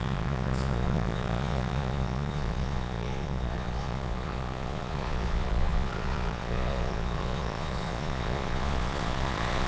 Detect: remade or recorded remade